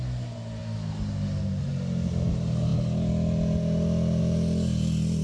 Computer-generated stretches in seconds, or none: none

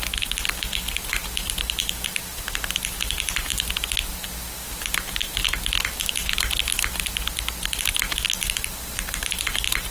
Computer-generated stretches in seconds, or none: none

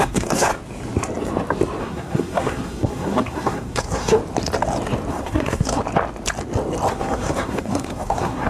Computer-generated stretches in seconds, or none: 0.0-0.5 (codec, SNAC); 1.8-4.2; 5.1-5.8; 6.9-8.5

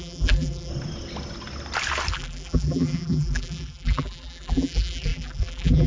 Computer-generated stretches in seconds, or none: 0.0-0.7 (vocoder, BigVGAN v2); 2.1-5.9

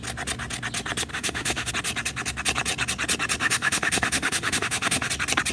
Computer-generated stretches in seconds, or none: 1.1-1.7 (autoencoder, DAC-VAE); 3.4-5.1